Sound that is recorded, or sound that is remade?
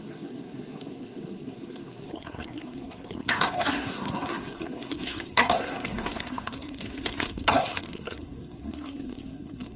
remade